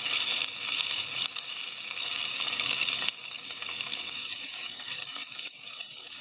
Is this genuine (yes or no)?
no